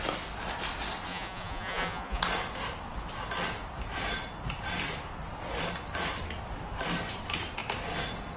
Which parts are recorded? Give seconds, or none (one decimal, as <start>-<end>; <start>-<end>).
0.0-1.1; 2.2-8.4